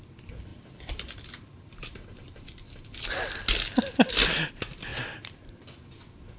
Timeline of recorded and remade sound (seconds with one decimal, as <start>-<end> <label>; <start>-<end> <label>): 0.0-0.5 recorded; 0.5-3.0 remade; 3.0-4.9 recorded; 4.9-5.5 remade; 5.5-6.4 recorded